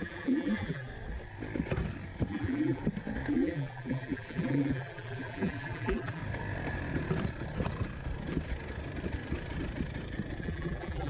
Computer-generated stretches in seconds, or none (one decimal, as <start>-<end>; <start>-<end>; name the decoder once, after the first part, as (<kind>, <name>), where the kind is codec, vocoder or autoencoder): 0.0-0.9 (vocoder, BigVGAN v2); 2.3-2.8; 3.3-6.2; 10.4-11.1